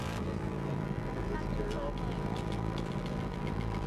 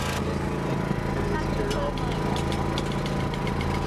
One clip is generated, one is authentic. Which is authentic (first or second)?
second